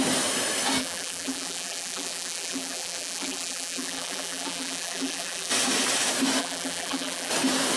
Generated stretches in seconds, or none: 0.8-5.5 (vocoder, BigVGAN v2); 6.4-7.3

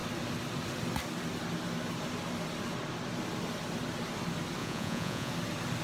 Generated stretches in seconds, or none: 4.6-5.3 (vocoder, Vocos)

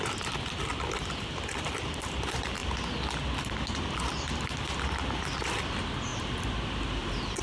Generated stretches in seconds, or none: 0.0-2.6 (vocoder, BigVGAN v2); 5.2-7.4